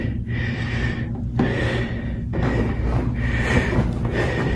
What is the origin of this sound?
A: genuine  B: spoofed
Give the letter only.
A